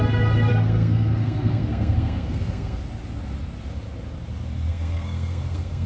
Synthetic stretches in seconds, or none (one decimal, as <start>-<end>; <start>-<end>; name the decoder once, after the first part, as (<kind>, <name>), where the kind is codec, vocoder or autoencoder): 0.5-2.8 (codec, SNAC); 4.7-5.9